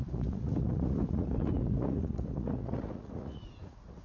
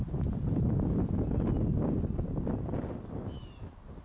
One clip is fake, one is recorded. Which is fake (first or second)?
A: first